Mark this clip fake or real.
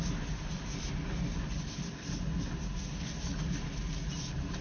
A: real